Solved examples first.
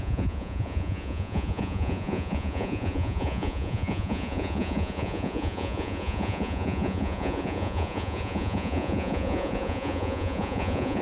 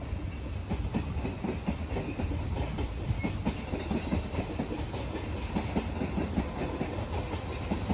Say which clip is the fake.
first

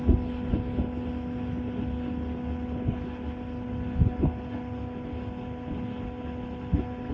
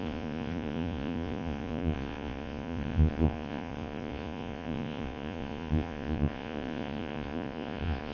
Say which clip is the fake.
second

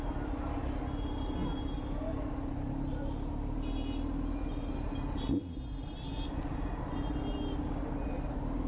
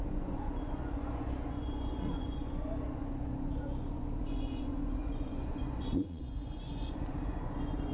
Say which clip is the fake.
second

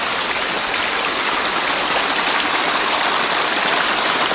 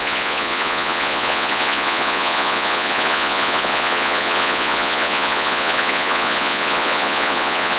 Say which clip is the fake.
second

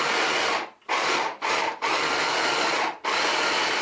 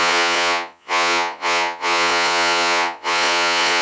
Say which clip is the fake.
second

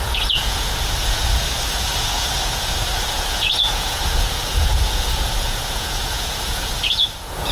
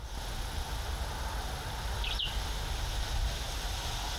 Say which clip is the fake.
first